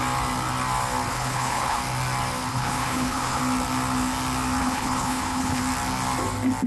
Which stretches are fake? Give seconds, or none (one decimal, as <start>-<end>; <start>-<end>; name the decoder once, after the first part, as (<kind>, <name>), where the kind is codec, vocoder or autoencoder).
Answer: 1.1-1.8 (codec, HILCodec); 2.5-3.4; 4.6-5.6